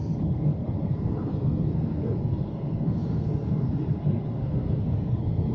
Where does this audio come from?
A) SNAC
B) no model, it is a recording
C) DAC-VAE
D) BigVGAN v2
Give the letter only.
A